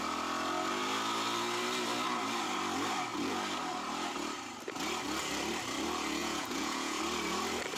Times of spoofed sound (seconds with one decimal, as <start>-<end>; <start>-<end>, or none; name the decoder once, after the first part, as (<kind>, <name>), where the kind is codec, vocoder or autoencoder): 6.2-7.0 (vocoder, Vocos)